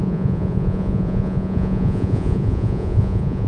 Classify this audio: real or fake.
fake